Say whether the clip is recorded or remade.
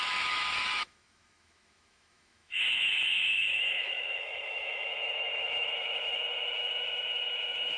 remade